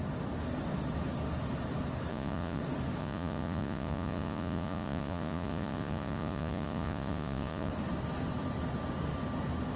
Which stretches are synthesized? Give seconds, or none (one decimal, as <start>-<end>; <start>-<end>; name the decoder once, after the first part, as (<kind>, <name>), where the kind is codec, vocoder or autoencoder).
2.1-2.6 (vocoder, Vocos); 3.0-7.7